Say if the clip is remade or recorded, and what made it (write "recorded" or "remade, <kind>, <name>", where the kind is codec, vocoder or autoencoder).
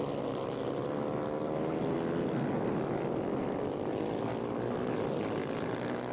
recorded